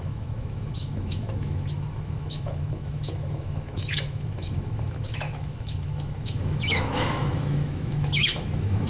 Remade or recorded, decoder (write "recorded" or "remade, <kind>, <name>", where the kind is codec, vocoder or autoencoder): remade, autoencoder, DAC-VAE